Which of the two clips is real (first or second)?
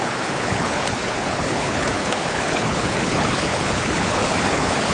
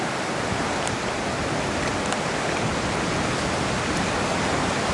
second